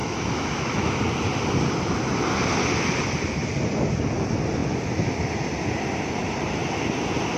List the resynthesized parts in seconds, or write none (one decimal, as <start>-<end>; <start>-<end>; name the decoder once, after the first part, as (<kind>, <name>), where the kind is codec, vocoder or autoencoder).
0.0-1.0 (autoencoder, DAC-VAE)